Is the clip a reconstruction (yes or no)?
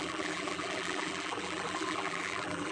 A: yes